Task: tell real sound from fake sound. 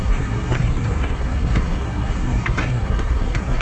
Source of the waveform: fake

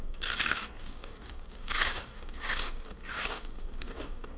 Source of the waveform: fake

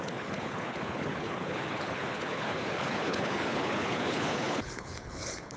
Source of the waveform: fake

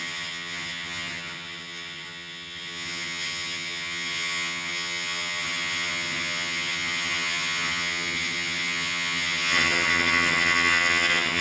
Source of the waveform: fake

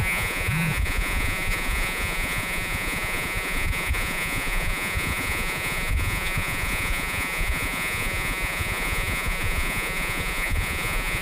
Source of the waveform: fake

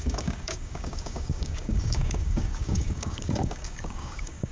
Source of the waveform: fake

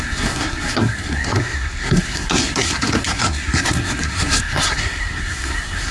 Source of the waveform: fake